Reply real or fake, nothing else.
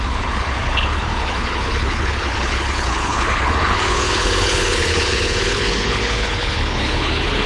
fake